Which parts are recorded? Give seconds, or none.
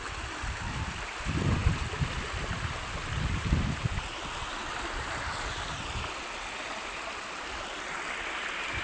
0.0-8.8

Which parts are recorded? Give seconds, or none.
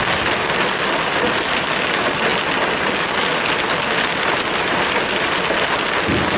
0.0-6.4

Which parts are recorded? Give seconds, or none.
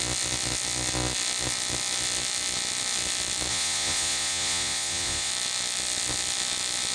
0.0-3.5; 5.3-6.9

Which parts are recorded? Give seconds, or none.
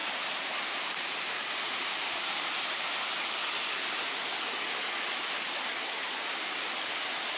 3.0-7.4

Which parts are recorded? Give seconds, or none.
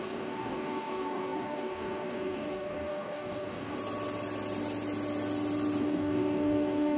3.8-5.8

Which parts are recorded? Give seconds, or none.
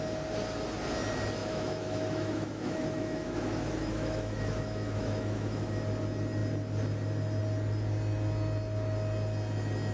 0.0-1.4; 5.7-9.9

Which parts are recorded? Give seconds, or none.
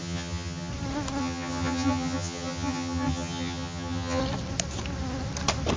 0.7-1.2; 4.2-5.8